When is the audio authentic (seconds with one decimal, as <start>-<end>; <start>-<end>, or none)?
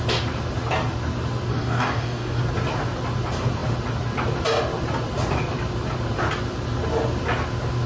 0.0-1.5; 2.4-7.9